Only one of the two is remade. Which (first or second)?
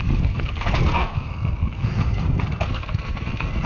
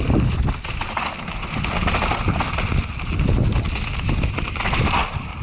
first